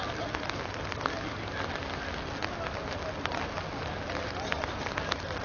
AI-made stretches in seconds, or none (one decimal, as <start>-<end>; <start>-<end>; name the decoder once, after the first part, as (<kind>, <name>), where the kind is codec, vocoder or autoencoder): none